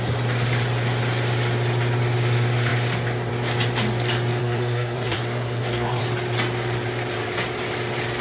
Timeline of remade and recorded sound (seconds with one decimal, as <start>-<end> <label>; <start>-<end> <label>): 0.0-4.4 recorded; 4.4-6.0 remade; 6.0-8.2 recorded